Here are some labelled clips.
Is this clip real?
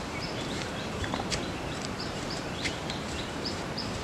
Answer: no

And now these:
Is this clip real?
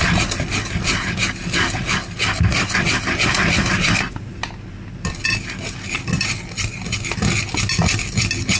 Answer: yes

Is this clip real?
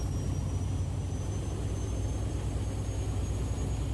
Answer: yes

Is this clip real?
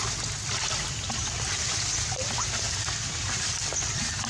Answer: yes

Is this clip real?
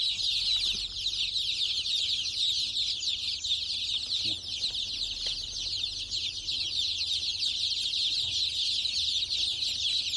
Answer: yes